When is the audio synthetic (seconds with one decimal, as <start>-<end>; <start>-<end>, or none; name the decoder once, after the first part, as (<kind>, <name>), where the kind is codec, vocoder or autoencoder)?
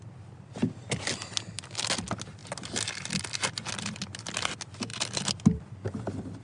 none